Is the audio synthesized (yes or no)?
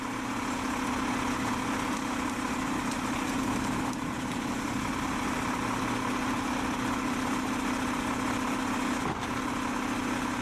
no